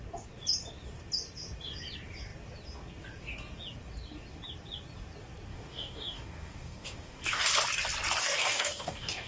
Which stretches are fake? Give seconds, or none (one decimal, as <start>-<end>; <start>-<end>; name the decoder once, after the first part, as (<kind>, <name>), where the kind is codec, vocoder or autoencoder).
5.5-7.5 (codec, DAC); 8.2-9.3